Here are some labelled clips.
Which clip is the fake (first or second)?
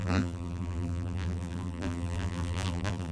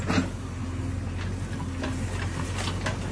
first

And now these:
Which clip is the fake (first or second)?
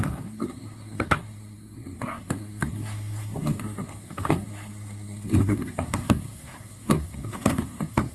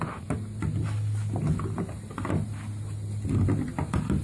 first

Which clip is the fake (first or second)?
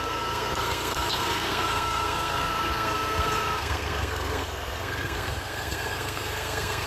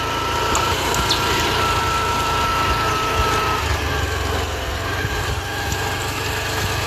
first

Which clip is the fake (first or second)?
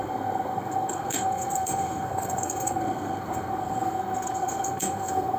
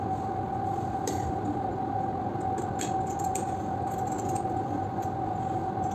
first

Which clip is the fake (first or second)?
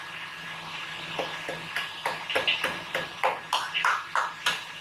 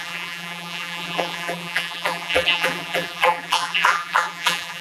second